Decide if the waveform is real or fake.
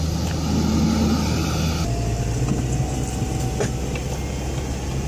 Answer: real